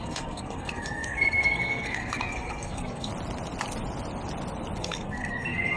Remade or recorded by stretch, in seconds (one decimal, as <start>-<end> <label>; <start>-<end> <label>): 0.0-3.1 remade; 3.1-4.8 recorded; 4.8-5.8 remade